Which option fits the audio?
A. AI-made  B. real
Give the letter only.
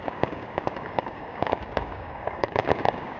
A